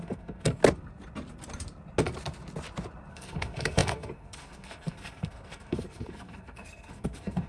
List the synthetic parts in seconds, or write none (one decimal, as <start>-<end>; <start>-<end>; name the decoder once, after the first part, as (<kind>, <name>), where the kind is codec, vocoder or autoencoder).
0.0-0.6 (codec, SNAC); 3.1-7.5